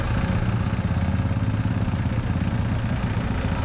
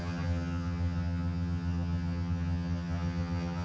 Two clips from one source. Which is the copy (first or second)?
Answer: second